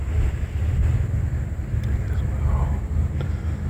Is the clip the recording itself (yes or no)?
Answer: yes